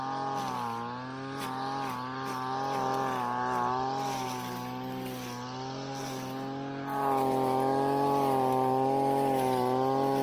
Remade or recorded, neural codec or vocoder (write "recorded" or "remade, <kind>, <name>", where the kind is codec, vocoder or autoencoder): recorded